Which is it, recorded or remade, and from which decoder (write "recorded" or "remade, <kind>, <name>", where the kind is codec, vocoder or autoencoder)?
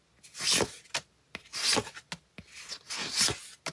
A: recorded